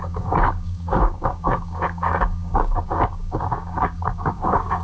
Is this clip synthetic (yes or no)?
yes